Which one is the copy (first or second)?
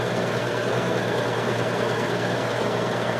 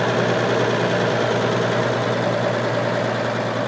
first